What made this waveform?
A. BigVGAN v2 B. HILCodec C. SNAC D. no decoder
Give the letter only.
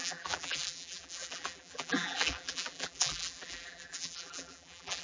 A